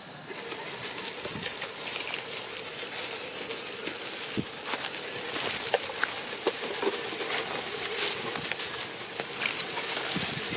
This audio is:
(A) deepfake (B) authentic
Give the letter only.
B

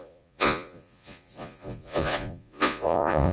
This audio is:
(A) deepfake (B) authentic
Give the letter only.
A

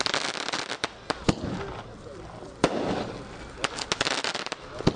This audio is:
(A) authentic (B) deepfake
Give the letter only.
A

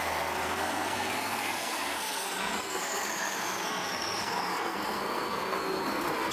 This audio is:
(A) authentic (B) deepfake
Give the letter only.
B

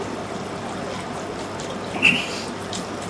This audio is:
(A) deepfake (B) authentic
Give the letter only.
B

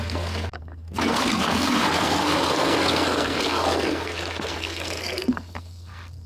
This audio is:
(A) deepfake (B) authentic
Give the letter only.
A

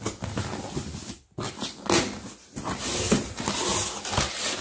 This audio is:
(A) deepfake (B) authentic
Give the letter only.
B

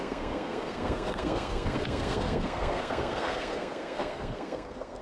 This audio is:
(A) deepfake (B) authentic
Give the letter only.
A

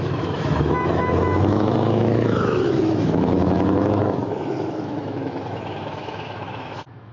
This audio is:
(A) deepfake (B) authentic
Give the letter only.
A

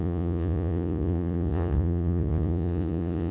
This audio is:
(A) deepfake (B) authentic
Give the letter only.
A